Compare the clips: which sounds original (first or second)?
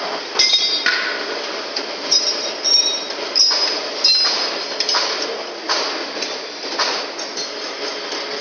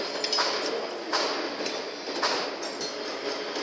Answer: second